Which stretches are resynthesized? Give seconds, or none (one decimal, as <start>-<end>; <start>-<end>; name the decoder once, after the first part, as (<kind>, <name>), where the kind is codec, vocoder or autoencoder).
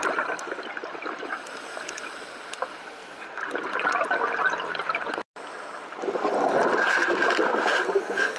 2.8-3.4 (codec, SNAC); 8.0-8.4